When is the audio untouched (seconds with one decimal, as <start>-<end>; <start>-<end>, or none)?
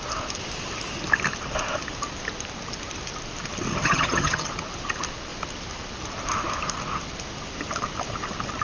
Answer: 0.0-3.7; 4.5-8.6